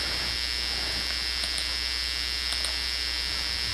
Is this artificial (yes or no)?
yes